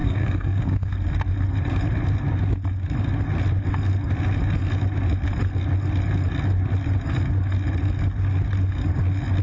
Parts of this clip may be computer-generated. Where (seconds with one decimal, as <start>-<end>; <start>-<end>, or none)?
0.0-0.9